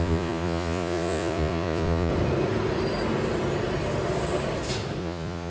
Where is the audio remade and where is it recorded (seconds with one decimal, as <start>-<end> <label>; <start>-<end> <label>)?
0.0-2.1 remade; 2.1-5.0 recorded; 5.0-5.5 remade